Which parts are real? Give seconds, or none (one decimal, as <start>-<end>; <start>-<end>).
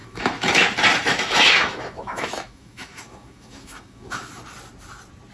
0.6-1.1; 4.3-5.3